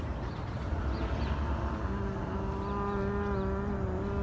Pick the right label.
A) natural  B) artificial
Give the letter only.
A